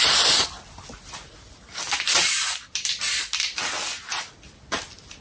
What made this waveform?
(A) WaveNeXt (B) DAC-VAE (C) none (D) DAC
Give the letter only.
C